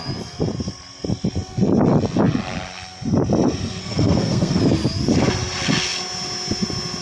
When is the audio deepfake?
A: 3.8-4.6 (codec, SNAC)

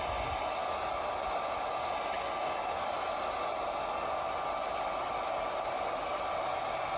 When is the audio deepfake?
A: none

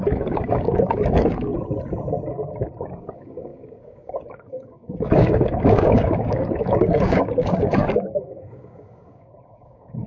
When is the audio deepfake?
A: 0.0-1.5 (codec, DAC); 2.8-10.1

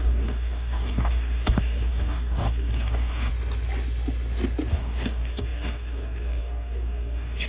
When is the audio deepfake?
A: 0.0-3.3 (codec, DAC); 4.7-7.5